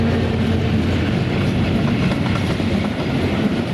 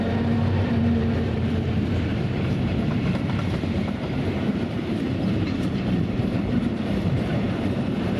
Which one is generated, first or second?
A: second